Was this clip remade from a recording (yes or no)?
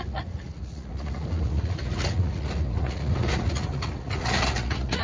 yes